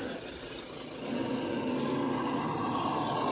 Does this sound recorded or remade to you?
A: recorded